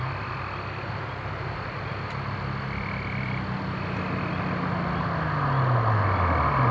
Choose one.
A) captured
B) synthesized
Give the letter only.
A